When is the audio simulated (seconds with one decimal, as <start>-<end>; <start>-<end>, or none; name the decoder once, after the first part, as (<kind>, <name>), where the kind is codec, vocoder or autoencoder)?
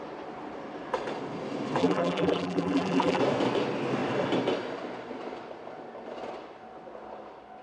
1.8-3.2 (vocoder, BigVGAN v2)